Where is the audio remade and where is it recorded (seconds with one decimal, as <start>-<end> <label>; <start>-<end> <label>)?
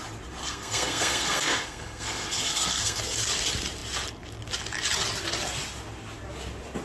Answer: 0.0-0.4 recorded; 0.4-3.0 remade; 3.0-6.8 recorded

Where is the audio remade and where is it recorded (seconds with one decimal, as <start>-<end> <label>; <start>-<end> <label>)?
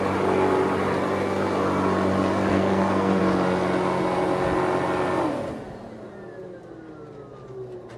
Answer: 0.0-2.5 recorded; 2.5-3.2 remade; 3.2-8.0 recorded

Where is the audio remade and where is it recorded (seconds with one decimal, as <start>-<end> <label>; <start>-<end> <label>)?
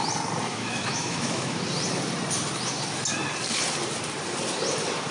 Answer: 0.0-0.5 recorded; 0.5-1.6 remade; 1.6-5.1 recorded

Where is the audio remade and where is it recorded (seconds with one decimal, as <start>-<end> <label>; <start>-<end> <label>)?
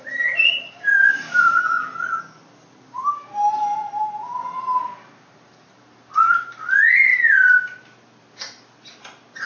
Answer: 0.0-0.9 remade; 0.9-2.2 recorded; 2.2-3.0 remade; 3.0-4.6 recorded; 4.6-7.1 remade; 7.1-9.5 recorded